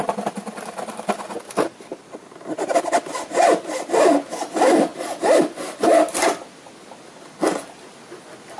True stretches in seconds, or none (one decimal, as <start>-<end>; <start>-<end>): 0.0-8.6